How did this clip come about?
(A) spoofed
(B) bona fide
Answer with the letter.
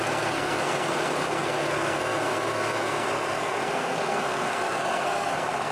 A